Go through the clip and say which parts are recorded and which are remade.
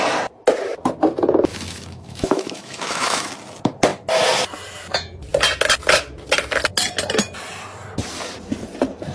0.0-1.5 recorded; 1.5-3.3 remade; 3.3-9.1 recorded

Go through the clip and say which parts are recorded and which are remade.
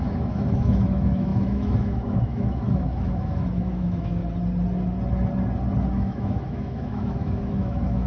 0.0-4.2 remade; 4.2-5.9 recorded; 5.9-8.1 remade